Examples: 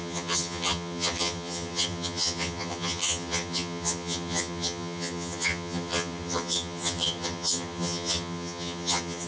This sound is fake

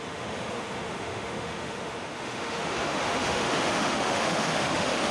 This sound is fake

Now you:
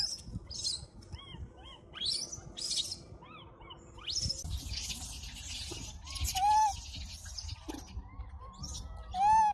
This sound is real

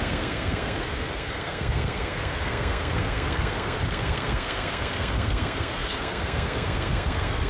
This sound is fake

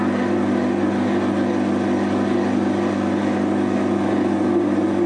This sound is real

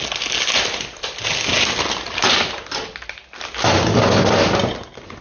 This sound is real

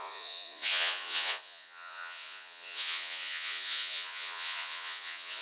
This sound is fake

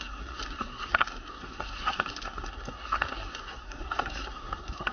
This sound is fake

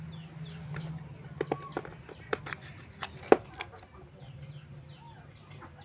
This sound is real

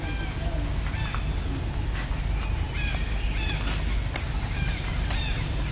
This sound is real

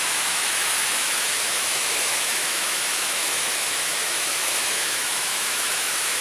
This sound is fake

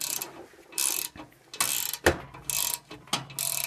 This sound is real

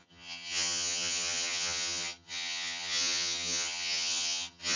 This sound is fake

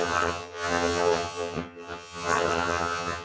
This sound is fake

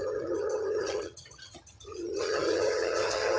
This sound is fake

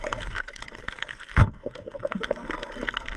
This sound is fake